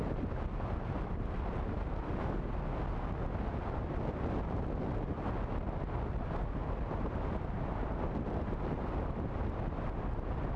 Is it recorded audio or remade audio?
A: recorded